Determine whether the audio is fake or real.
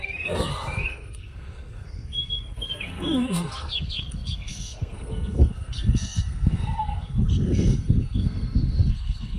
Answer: fake